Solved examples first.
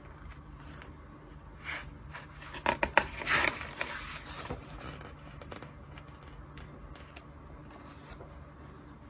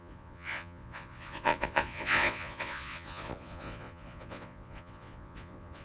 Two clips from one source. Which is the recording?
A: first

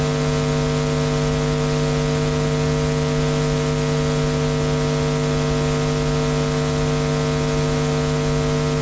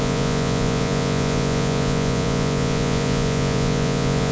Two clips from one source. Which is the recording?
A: first